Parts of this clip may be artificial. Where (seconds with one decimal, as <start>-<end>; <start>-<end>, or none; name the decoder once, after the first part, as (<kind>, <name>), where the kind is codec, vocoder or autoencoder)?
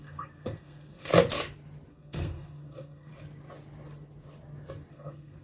0.0-1.1 (codec, SNAC); 1.9-3.1; 4.9-5.4